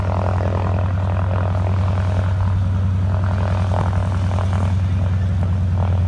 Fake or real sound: real